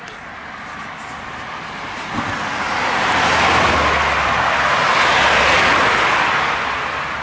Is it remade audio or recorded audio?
recorded